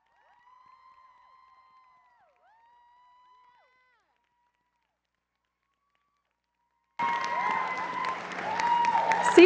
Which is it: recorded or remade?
recorded